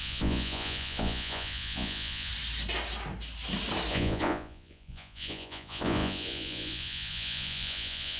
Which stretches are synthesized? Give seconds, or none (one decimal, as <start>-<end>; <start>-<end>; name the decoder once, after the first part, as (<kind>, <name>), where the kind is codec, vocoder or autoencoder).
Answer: 0.0-2.3 (vocoder, Vocos); 3.9-8.2